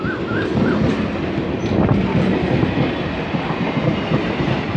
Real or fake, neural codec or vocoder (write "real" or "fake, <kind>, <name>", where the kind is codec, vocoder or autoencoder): real